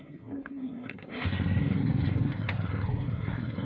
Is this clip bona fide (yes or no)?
no